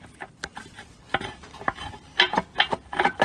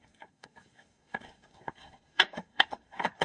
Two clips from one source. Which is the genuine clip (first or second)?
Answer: first